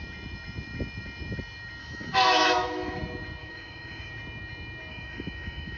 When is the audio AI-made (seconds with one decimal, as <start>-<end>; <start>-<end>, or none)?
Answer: 1.8-3.0; 3.4-4.1; 4.9-5.8